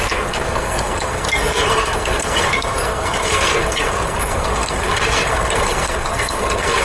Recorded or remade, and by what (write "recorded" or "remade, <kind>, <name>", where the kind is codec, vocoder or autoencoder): remade, codec, SNAC